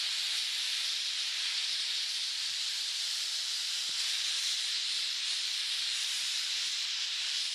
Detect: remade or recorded remade